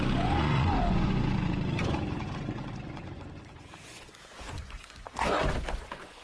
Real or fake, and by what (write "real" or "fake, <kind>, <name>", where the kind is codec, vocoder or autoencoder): fake, vocoder, Vocos